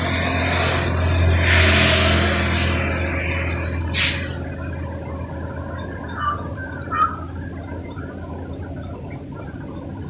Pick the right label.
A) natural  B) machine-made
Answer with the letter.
A